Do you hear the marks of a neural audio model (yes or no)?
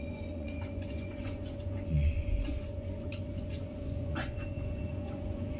yes